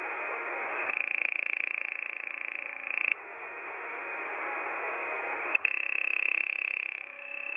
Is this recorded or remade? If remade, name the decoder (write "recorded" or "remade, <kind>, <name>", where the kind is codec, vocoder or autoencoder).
remade, autoencoder, DAC-VAE